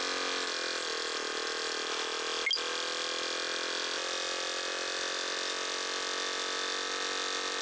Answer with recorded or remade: recorded